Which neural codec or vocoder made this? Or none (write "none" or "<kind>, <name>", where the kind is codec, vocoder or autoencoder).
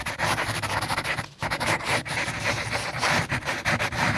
vocoder, BigVGAN v2